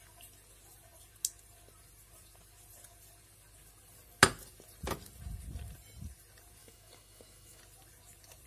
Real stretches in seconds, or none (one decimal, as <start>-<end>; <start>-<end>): 0.0-6.6; 7.6-8.5